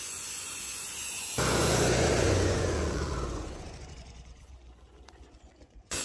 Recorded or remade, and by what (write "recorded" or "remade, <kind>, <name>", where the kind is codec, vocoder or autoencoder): remade, vocoder, Vocos